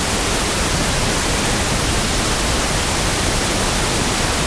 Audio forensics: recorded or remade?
recorded